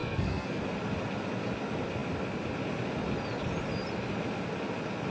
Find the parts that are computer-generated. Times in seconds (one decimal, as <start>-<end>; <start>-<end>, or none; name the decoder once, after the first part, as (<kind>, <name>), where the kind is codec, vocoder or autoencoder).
0.0-0.6 (codec, SNAC)